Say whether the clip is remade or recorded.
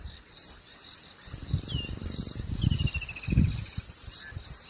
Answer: recorded